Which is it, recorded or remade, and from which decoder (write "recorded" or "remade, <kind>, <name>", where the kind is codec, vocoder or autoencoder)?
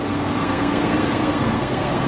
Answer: remade, codec, SNAC